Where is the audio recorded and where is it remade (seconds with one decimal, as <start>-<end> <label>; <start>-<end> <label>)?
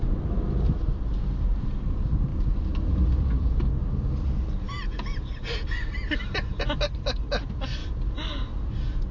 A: 0.0-9.1 recorded